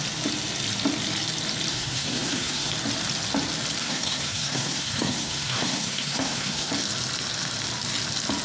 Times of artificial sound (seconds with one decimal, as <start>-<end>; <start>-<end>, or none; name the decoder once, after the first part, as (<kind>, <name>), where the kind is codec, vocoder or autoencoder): 1.7-2.7 (codec, SNAC); 3.8-6.7